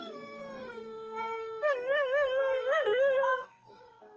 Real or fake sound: fake